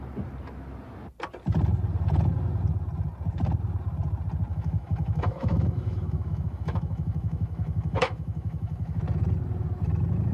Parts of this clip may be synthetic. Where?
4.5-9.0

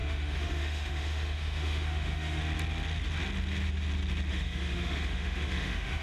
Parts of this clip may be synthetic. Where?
0.0-2.4; 4.3-6.0